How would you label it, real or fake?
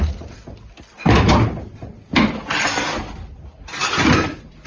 real